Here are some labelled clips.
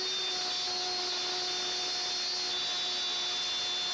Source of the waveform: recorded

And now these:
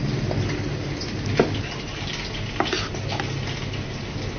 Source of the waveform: recorded